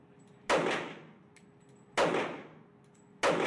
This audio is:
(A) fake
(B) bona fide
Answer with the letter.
B